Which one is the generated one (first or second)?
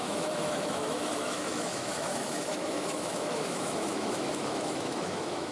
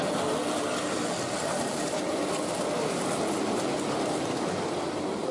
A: first